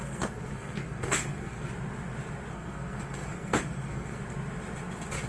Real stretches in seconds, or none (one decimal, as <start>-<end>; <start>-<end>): 1.7-2.5; 4.2-5.3

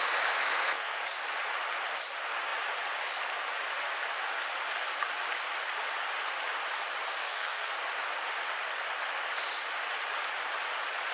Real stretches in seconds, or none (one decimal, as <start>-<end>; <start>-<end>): 0.0-0.5; 1.0-7.2; 7.7-11.1